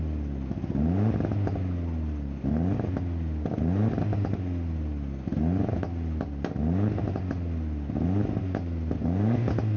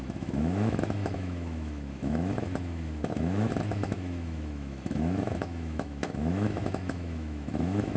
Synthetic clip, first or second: second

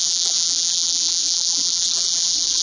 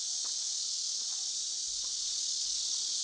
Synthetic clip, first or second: first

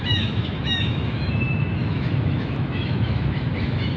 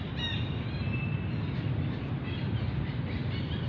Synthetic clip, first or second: first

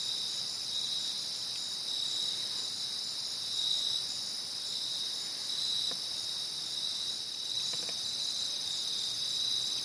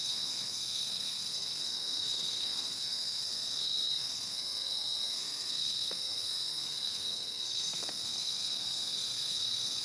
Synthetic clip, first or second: second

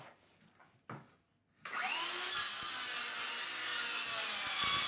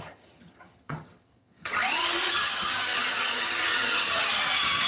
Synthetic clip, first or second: second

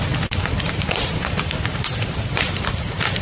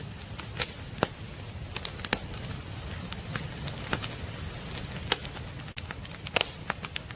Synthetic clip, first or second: first